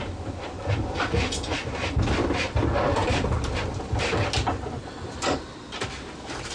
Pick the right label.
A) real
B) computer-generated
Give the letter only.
A